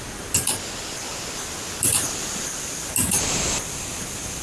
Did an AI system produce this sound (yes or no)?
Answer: no